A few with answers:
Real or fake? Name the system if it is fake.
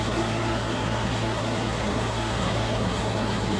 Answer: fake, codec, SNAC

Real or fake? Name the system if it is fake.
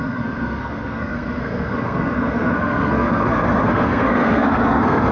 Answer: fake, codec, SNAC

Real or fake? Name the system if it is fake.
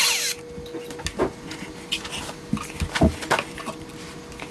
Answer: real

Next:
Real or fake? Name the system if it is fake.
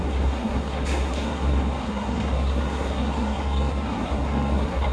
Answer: fake, codec, SNAC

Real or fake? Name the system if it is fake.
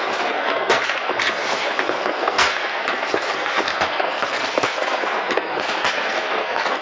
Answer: fake, codec, SNAC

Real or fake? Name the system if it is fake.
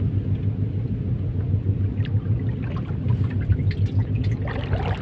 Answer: real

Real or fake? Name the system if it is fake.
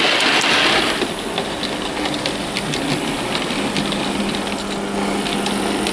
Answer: real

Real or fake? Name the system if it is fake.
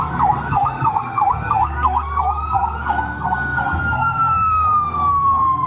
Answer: fake, codec, SNAC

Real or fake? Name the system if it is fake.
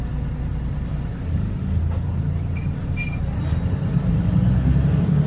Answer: real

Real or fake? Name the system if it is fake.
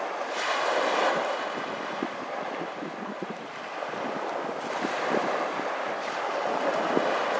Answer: real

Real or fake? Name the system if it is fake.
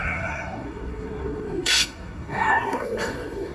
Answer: fake, codec, SNAC